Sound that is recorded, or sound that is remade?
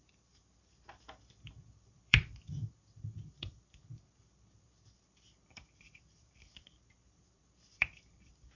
remade